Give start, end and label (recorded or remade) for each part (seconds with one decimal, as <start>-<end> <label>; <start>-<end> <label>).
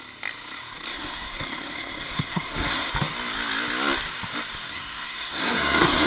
0.0-0.9 recorded; 0.9-2.9 remade; 2.9-4.7 recorded; 4.7-6.1 remade